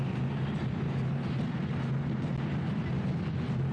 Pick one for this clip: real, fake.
real